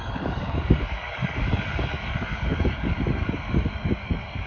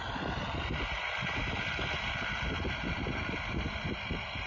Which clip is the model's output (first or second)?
first